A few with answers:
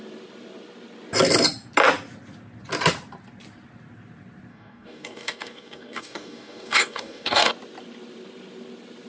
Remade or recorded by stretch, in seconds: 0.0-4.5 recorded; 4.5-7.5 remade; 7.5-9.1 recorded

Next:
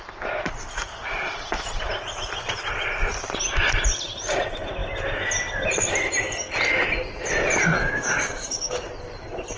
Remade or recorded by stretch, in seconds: 0.0-7.8 recorded; 7.8-8.9 remade; 8.9-9.6 recorded